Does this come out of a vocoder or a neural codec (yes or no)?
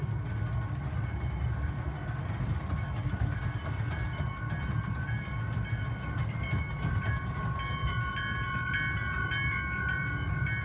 no